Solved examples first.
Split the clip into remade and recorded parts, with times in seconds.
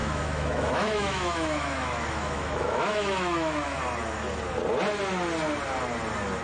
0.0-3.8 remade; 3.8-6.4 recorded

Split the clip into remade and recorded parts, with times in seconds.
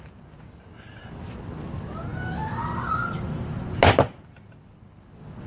0.0-5.5 recorded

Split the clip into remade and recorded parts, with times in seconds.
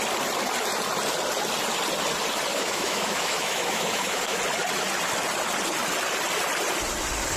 0.0-2.5 recorded; 2.5-4.4 remade; 4.4-7.4 recorded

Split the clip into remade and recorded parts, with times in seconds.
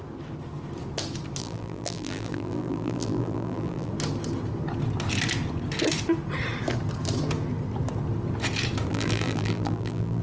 0.0-1.4 recorded; 1.4-3.9 remade; 3.9-8.9 recorded; 8.9-10.2 remade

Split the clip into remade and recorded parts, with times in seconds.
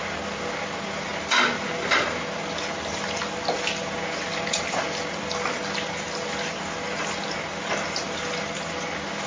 0.0-9.3 recorded